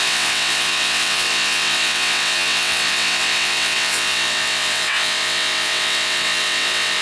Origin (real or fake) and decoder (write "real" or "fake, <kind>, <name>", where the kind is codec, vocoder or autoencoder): fake, vocoder, WaveNeXt